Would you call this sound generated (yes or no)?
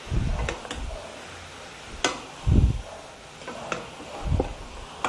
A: no